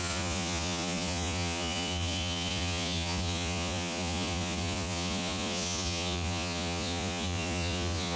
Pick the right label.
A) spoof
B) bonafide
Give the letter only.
A